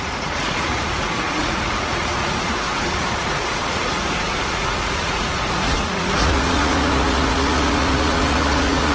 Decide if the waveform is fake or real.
fake